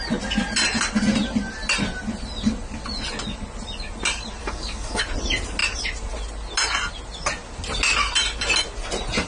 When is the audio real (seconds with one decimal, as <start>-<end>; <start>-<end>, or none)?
0.0-4.4; 5.0-9.3